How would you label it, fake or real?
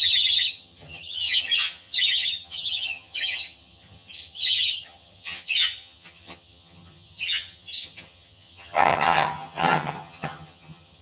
fake